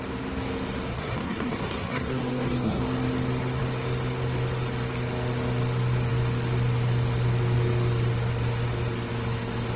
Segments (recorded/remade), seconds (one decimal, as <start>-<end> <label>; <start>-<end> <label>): 0.0-0.9 recorded; 0.9-2.8 remade; 2.8-9.8 recorded